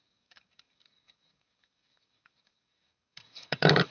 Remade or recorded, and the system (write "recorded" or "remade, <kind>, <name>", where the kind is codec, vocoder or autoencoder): remade, codec, DAC